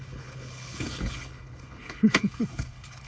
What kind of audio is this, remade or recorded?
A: remade